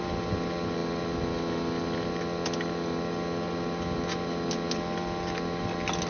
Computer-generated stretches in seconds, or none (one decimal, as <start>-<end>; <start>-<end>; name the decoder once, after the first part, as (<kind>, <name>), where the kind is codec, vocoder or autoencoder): none

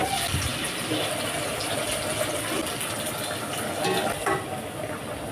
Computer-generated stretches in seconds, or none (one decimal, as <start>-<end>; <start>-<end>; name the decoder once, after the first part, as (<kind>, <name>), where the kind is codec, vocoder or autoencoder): none

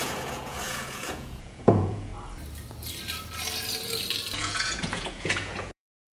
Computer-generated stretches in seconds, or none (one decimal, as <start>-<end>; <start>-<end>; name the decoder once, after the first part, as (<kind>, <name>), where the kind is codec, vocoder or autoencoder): 0.0-2.1 (vocoder, Vocos); 4.4-6.1

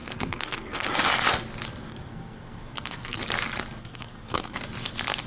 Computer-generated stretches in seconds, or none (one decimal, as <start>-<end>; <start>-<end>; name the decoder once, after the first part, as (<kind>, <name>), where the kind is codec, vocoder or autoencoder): 0.0-0.9 (codec, SNAC); 1.9-3.2; 3.8-4.6

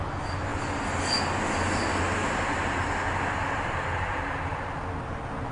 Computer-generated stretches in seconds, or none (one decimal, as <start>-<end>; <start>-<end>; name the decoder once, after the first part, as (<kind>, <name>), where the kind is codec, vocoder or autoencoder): none

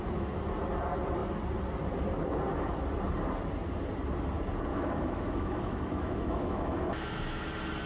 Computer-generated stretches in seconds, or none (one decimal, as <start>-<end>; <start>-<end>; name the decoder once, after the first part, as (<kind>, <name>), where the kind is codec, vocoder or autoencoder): 4.7-7.4 (autoencoder, DAC-VAE)

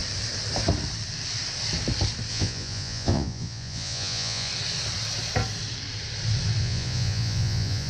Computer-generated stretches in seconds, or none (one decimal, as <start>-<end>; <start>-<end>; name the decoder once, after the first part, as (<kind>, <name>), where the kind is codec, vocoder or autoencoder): 2.3-4.5 (vocoder, Vocos); 6.6-7.9